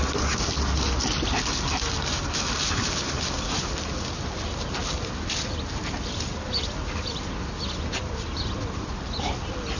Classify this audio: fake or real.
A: real